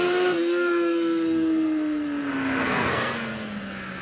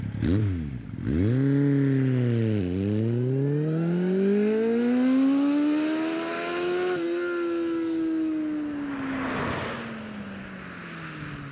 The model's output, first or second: first